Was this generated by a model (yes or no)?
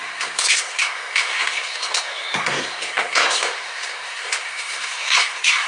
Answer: yes